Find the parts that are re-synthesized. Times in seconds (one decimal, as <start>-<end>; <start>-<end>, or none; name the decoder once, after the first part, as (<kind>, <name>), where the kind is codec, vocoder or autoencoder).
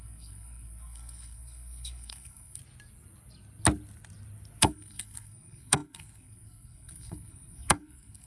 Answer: 0.0-2.6 (codec, SNAC); 4.6-8.3